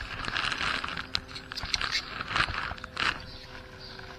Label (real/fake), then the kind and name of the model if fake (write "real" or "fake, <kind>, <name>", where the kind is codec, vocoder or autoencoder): real